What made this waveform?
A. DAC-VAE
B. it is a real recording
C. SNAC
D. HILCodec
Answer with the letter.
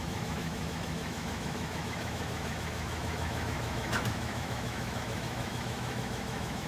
A